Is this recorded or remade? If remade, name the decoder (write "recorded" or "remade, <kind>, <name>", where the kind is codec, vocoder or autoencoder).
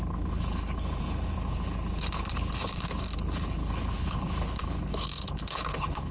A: remade, codec, HILCodec